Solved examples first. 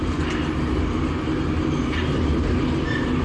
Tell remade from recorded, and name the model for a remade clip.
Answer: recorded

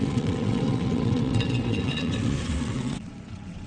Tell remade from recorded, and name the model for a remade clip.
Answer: remade, vocoder, WaveNeXt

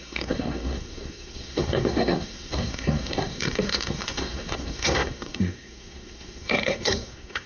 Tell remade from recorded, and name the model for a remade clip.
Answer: remade, codec, SNAC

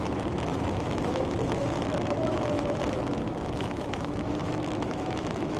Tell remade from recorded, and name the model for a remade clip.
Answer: remade, autoencoder, DAC-VAE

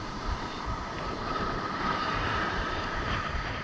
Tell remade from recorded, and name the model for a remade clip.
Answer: remade, vocoder, BigVGAN v2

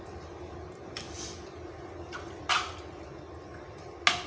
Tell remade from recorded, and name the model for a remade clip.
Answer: recorded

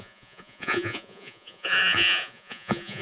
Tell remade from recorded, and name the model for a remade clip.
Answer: remade, vocoder, Vocos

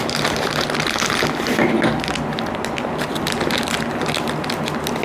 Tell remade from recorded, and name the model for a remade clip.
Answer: recorded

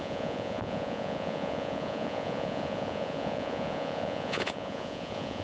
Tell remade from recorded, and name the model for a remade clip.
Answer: remade, vocoder, Vocos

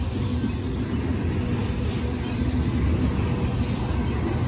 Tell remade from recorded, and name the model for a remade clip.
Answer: recorded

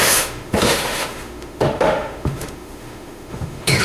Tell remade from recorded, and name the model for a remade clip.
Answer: remade, autoencoder, DAC-VAE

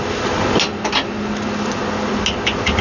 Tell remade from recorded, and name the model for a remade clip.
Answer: recorded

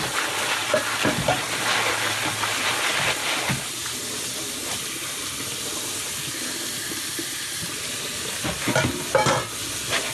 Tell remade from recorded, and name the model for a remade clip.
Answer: recorded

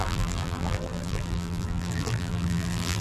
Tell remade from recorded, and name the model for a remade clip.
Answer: remade, vocoder, BigVGAN v2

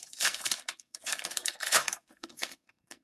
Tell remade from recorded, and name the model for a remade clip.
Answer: remade, codec, SNAC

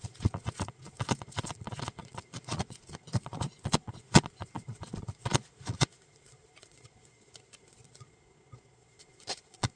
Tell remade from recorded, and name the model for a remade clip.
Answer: remade, vocoder, Vocos